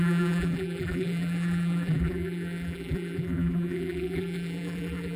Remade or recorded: remade